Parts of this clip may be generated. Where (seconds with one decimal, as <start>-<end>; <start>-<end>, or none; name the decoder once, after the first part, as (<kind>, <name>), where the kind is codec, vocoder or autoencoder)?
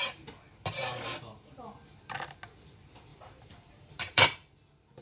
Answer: 3.1-4.5 (vocoder, BigVGAN v2)